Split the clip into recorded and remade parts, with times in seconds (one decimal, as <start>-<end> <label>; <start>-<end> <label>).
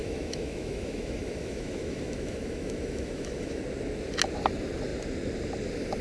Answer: 0.0-3.6 remade; 3.6-6.0 recorded